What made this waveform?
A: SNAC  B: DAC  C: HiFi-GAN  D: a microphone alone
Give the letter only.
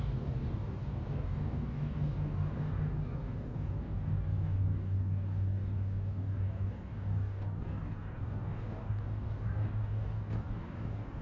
B